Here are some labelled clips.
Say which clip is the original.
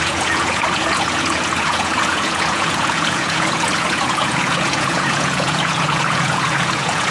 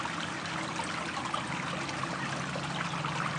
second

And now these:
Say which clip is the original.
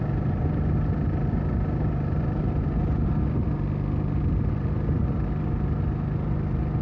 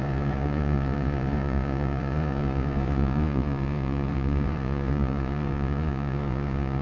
first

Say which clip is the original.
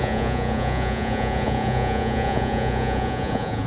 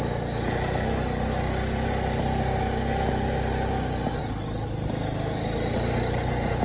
second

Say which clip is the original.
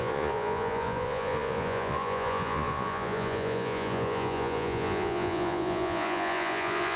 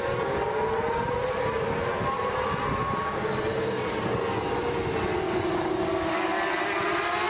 second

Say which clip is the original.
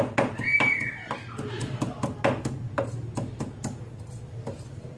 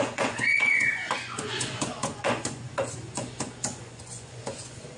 first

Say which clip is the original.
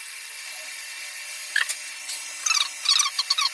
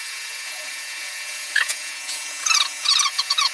first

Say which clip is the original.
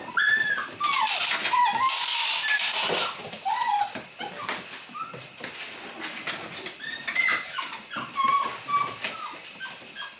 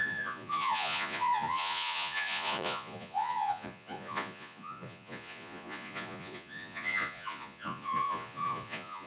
first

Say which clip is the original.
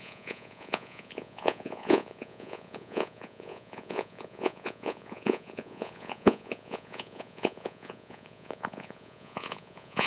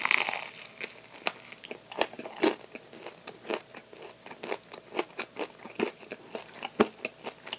second